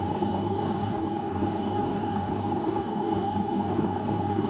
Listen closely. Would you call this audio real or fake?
fake